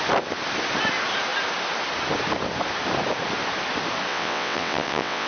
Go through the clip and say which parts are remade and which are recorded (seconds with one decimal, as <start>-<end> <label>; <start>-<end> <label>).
0.0-4.1 recorded; 4.1-5.3 remade